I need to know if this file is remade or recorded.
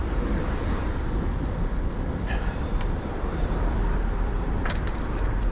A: remade